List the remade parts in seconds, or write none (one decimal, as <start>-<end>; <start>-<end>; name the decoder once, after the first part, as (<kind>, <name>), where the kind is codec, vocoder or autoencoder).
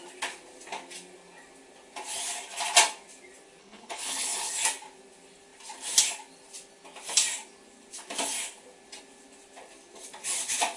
3.6-4.5 (codec, HILCodec)